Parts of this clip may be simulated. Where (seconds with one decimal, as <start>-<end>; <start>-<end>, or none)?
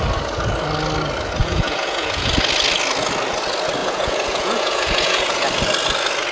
1.4-2.3; 3.8-5.4